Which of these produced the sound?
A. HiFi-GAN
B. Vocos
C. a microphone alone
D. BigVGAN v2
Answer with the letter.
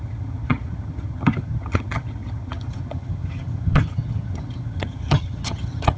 A